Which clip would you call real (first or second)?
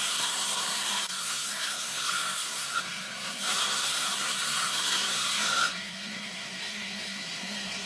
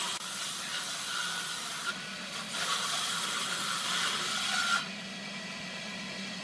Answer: second